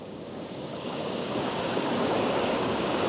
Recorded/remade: remade